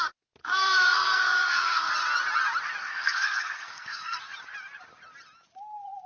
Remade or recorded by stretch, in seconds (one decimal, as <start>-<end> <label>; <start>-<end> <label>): 0.0-0.4 recorded; 0.4-1.9 remade; 1.9-2.8 recorded; 2.8-4.2 remade; 4.2-6.1 recorded